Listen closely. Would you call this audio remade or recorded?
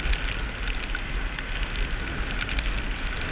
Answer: recorded